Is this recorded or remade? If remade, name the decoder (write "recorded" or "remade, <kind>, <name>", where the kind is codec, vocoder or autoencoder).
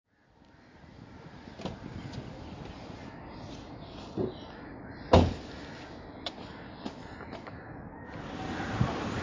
recorded